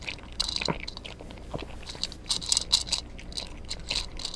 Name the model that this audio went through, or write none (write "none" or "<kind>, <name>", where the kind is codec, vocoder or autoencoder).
none